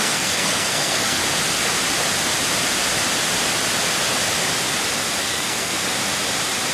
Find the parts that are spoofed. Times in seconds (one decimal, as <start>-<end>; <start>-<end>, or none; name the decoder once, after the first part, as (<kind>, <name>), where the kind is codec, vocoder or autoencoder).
0.0-1.2 (codec, SNAC); 5.2-5.8

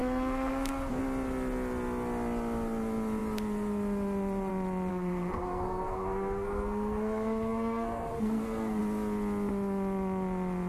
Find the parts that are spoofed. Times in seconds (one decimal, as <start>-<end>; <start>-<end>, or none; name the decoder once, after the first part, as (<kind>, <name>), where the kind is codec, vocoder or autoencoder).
0.0-1.0 (codec, SNAC); 4.9-8.8

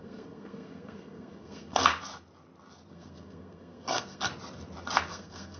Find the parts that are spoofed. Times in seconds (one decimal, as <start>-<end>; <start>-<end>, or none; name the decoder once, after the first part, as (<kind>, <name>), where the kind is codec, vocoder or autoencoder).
0.0-1.9 (codec, SNAC); 2.9-4.3; 5.1-5.6

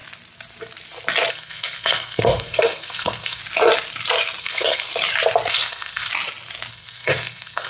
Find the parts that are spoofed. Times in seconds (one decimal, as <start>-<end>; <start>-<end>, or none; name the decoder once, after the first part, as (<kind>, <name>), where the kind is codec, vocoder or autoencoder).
1.3-3.4 (codec, SNAC); 4.4-4.9; 5.5-6.1; 6.7-7.7